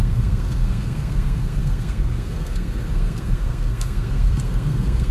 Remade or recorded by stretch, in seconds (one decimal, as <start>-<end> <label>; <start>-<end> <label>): 0.0-5.1 remade